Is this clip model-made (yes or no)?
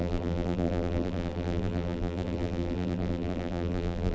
yes